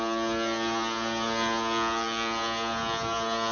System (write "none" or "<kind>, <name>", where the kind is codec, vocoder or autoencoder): none